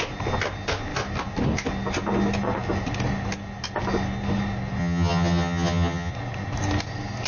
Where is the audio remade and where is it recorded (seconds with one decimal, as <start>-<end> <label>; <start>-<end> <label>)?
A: 0.0-4.8 recorded; 4.8-6.1 remade; 6.1-7.3 recorded